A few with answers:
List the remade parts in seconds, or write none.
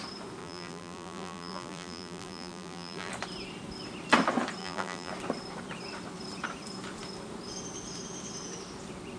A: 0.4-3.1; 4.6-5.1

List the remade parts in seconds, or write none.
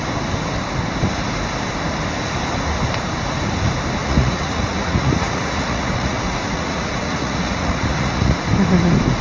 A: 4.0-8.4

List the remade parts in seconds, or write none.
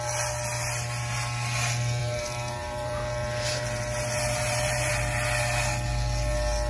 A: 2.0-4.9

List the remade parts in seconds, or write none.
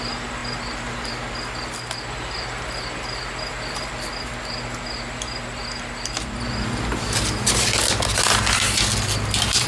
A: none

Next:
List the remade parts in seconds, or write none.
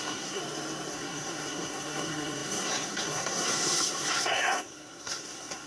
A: 0.0-0.4; 0.9-5.7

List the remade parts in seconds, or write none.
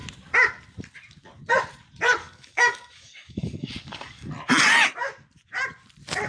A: 2.2-4.3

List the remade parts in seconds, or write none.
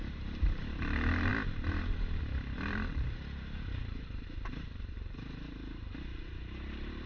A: 0.0-1.3; 2.2-7.1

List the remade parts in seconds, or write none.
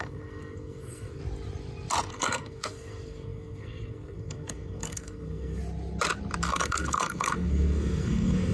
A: 0.0-1.2; 2.1-5.6; 6.5-8.5